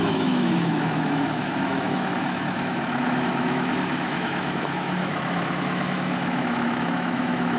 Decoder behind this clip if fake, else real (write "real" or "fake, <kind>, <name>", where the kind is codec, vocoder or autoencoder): fake, autoencoder, DAC-VAE